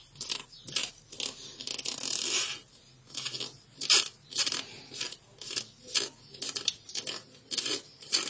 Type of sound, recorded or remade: recorded